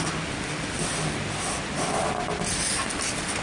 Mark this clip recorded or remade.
remade